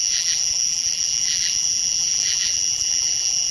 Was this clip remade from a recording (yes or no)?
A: yes